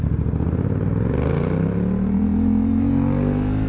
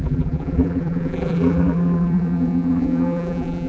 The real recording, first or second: first